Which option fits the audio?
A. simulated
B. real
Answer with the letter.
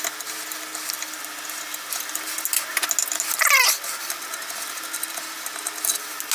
B